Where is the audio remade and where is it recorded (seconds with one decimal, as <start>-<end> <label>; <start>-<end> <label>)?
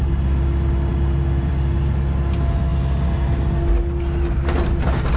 0.0-5.2 recorded